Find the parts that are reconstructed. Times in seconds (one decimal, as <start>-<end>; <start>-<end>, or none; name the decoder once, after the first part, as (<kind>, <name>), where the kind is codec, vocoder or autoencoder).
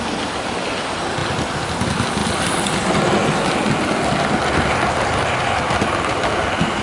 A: none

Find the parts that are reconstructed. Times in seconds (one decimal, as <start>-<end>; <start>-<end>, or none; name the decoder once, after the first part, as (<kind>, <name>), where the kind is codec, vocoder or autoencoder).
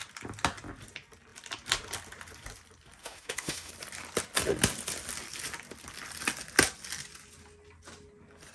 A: 3.0-3.7 (autoencoder, DAC-VAE)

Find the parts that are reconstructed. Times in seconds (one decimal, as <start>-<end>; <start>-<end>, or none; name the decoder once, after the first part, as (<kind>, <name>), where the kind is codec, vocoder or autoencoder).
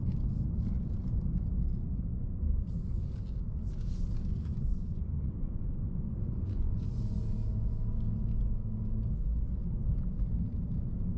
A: 2.1-2.7 (vocoder, Vocos); 4.3-7.0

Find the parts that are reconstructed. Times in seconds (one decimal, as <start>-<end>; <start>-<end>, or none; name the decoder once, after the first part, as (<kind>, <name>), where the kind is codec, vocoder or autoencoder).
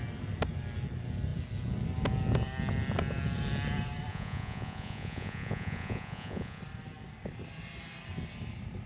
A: 4.1-6.6 (vocoder, Vocos)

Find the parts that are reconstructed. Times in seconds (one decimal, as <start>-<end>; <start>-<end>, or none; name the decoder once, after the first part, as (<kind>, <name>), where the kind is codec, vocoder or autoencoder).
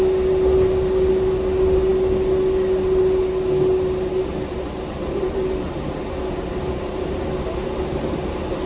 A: none